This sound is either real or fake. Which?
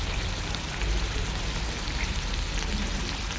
real